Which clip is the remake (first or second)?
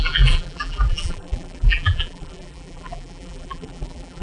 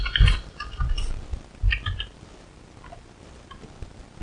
first